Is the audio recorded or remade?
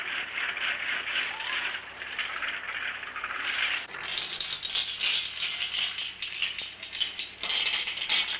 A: recorded